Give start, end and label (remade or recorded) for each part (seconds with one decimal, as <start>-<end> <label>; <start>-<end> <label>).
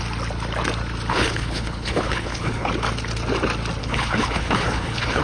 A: 0.0-1.1 recorded; 1.1-2.7 remade; 2.7-3.8 recorded; 3.8-5.2 remade